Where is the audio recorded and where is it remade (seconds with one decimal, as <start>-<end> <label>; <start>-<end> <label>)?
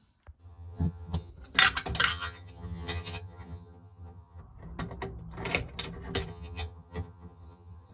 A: 0.0-0.4 recorded; 0.4-1.3 remade; 1.3-2.1 recorded; 2.1-4.4 remade; 4.4-6.3 recorded; 6.3-7.9 remade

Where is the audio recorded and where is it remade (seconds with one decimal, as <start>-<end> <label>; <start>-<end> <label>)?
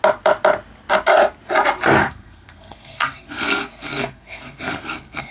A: 0.0-2.0 recorded; 2.0-5.3 remade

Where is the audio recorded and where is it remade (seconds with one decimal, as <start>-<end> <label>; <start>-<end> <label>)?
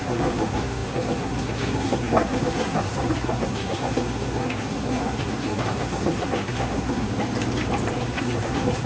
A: 0.0-7.1 remade; 7.1-7.9 recorded; 7.9-8.9 remade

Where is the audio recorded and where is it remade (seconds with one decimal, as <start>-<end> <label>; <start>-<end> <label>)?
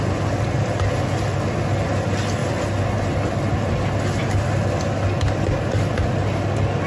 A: 0.0-6.9 recorded